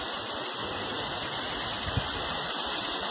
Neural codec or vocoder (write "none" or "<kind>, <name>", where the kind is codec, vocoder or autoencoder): vocoder, BigVGAN v2